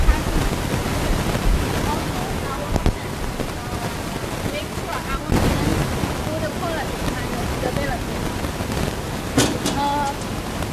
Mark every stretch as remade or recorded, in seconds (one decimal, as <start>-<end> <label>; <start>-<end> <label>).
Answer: 0.0-10.7 recorded